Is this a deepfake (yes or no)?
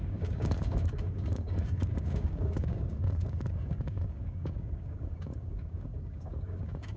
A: yes